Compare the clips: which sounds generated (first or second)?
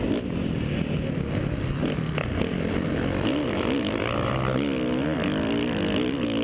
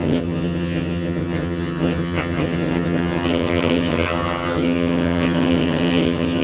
second